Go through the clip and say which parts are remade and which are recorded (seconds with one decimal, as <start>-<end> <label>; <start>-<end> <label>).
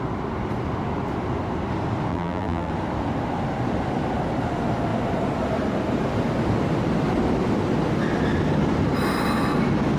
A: 0.0-2.1 recorded; 2.1-2.7 remade; 2.7-10.0 recorded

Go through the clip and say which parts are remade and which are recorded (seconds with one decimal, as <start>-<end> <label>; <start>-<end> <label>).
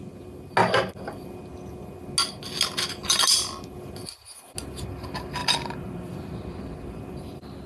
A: 0.0-5.4 recorded; 5.4-7.7 remade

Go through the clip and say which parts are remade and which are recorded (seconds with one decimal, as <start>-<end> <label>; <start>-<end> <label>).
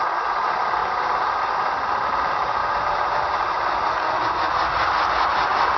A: 0.0-0.8 recorded; 0.8-1.4 remade; 1.4-2.6 recorded; 2.6-3.5 remade; 3.5-5.8 recorded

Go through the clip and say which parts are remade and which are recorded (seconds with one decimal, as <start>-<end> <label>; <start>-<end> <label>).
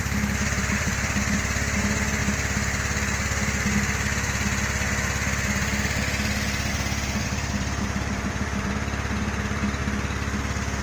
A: 0.0-2.2 remade; 2.2-6.7 recorded; 6.7-9.8 remade; 9.8-10.8 recorded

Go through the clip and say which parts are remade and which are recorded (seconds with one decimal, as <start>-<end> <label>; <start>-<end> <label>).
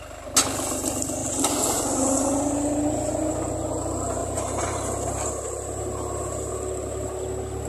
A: 0.0-4.2 recorded; 4.2-6.5 remade; 6.5-7.7 recorded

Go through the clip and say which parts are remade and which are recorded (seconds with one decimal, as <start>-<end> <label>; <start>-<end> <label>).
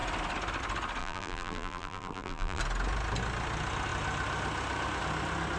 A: 0.0-1.0 recorded; 1.0-2.6 remade; 2.6-5.6 recorded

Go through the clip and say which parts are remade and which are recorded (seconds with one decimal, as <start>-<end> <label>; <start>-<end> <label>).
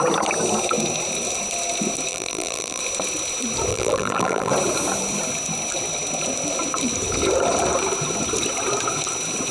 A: 0.0-2.1 recorded; 2.1-2.8 remade; 2.8-3.7 recorded; 3.7-4.5 remade; 4.5-9.5 recorded